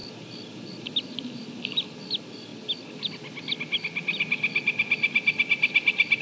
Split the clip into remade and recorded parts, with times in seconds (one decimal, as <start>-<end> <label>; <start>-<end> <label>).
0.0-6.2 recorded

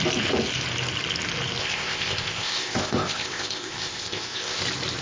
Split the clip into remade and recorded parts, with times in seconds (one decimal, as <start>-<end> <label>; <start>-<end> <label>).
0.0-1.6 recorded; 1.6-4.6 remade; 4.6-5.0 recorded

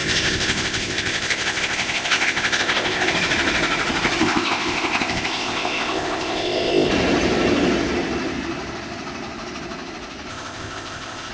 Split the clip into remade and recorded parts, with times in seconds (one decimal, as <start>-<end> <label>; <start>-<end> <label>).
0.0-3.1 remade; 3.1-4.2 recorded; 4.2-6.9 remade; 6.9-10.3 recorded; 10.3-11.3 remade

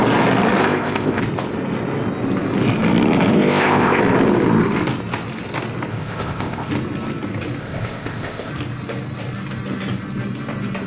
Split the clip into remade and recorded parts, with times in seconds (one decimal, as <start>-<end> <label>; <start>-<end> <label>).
0.0-0.6 recorded; 0.6-1.2 remade; 1.2-3.3 recorded; 3.3-4.0 remade; 4.0-5.9 recorded; 5.9-6.7 remade; 6.7-7.6 recorded; 7.6-8.5 remade; 8.5-10.9 recorded